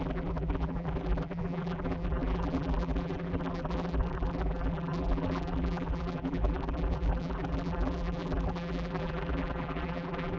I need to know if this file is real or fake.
fake